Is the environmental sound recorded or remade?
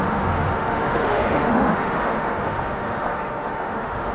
remade